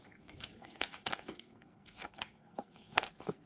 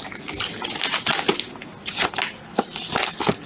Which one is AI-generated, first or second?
first